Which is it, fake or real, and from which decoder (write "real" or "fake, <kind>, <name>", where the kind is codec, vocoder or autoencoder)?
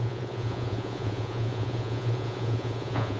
fake, vocoder, Vocos